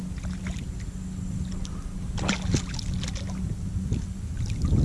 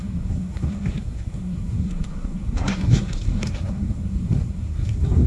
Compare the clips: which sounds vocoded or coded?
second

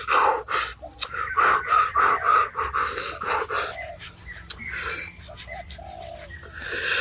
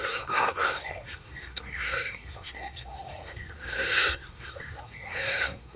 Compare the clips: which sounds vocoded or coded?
second